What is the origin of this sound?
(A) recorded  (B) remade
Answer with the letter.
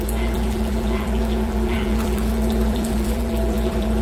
B